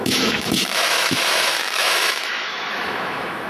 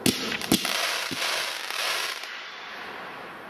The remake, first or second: first